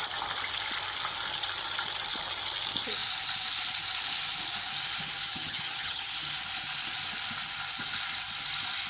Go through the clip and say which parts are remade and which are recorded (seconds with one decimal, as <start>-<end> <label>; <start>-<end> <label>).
0.0-5.3 recorded; 5.3-6.1 remade; 6.1-8.9 recorded